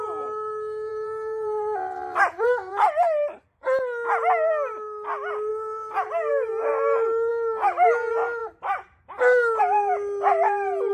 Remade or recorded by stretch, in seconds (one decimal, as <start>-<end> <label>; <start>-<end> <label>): 0.0-0.9 recorded; 0.9-3.6 remade; 3.6-10.9 recorded